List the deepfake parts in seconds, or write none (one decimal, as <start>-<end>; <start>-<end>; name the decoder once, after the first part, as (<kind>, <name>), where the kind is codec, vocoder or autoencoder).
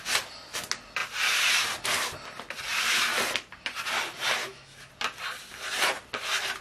4.4-4.9 (autoencoder, DAC-VAE)